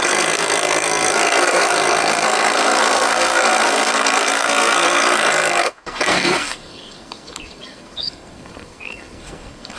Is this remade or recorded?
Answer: remade